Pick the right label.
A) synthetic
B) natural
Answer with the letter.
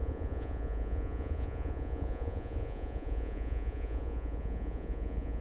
A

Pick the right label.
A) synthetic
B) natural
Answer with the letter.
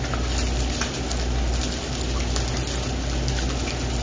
B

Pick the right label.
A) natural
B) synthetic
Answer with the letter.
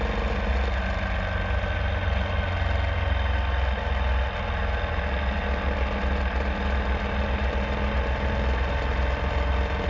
A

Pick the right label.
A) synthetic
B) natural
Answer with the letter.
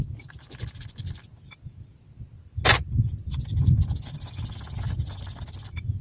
B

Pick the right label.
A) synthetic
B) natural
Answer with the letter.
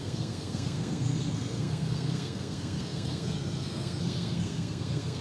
A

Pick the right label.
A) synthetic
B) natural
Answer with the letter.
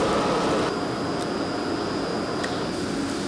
B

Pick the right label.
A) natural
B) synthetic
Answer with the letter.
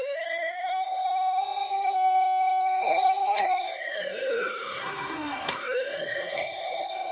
B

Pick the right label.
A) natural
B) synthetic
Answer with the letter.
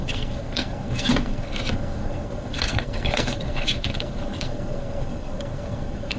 B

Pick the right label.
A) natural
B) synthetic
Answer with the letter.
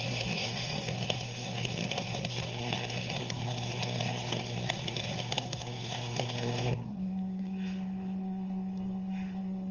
B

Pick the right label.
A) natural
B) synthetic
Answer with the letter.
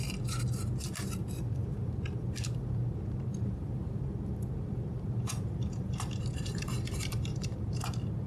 B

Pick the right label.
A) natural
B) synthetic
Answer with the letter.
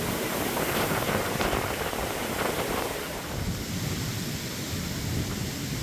A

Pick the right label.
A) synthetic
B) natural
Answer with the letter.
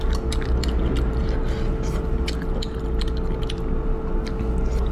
B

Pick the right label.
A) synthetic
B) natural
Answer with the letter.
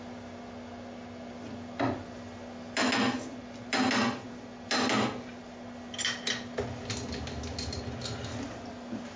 B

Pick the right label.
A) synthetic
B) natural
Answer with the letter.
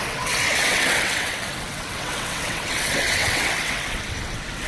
A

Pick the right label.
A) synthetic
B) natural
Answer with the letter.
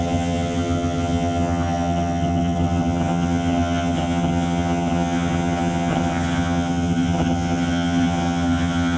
A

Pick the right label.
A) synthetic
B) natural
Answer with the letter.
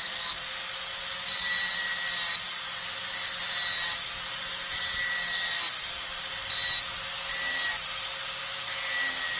B